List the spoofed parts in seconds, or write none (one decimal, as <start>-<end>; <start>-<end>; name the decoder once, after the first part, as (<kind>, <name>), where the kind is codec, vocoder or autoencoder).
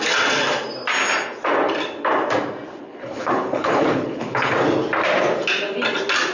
2.8-4.5 (codec, HILCodec)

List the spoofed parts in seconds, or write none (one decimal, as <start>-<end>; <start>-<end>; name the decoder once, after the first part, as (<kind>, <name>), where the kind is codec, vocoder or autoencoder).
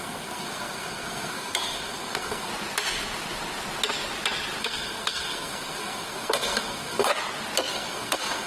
0.0-2.5 (codec, SNAC); 4.6-7.1; 7.7-8.5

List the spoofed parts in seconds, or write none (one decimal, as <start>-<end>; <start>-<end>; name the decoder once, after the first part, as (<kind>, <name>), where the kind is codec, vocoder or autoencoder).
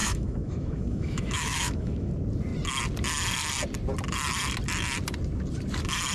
0.0-2.1 (autoencoder, DAC-VAE)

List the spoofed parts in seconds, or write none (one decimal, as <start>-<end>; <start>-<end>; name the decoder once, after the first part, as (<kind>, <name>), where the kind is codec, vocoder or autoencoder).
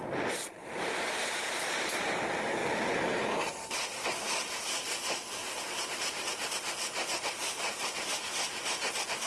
0.6-2.2 (vocoder, BigVGAN v2); 5.4-6.5; 7.4-8.1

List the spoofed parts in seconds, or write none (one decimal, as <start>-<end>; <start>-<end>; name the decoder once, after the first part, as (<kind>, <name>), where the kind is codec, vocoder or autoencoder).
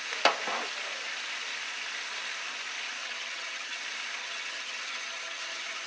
3.0-3.8 (vocoder, HiFi-GAN); 4.2-5.9